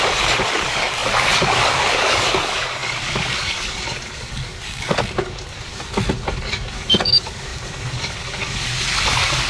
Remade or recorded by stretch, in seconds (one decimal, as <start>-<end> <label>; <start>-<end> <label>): 0.0-5.7 remade; 5.7-6.3 recorded; 6.3-9.5 remade